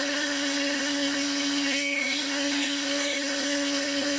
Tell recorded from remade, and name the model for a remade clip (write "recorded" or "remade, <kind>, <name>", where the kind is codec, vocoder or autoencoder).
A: remade, codec, SNAC